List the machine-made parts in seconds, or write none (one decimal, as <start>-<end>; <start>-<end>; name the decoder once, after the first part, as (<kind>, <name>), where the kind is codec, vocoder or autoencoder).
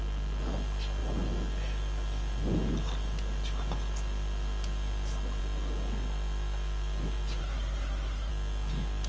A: 7.4-8.3 (codec, SNAC)